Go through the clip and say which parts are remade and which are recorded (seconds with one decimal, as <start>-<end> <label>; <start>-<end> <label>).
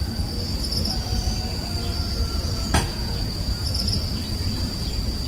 0.0-1.9 recorded; 1.9-4.0 remade; 4.0-5.3 recorded